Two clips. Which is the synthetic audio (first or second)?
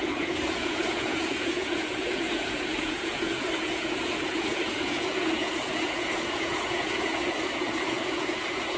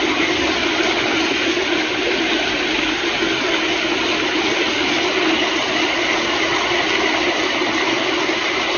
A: first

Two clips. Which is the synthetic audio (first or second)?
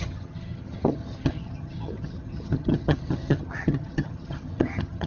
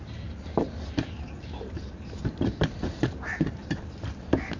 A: first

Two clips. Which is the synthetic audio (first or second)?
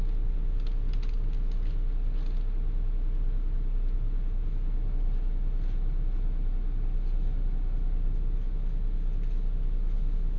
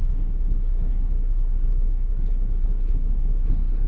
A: second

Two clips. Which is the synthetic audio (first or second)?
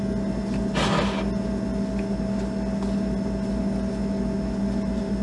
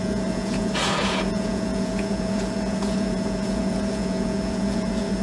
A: second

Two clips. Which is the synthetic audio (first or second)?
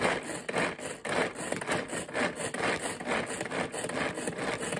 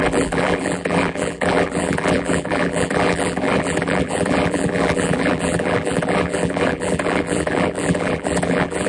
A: second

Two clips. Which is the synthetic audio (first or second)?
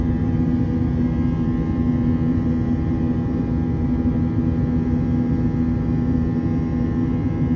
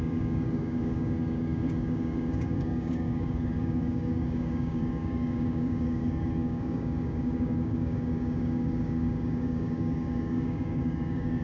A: second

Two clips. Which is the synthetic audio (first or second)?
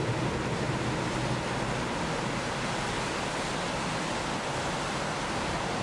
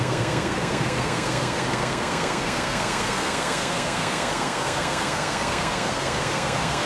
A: second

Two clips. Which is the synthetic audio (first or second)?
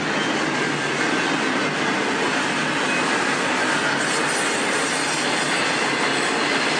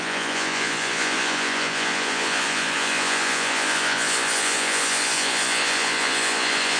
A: second